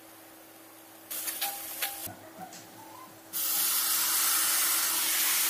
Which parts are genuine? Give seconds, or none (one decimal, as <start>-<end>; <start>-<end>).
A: 0.0-5.5